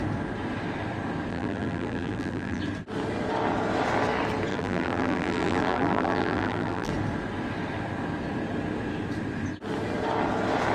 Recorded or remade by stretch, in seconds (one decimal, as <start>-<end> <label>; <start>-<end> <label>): 0.0-1.3 recorded; 1.3-2.6 remade; 2.6-4.5 recorded; 4.5-6.9 remade; 6.9-10.7 recorded